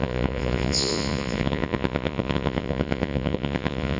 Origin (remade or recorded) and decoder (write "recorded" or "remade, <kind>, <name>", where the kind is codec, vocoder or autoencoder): remade, vocoder, Vocos